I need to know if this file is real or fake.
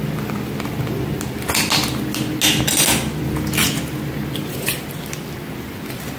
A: real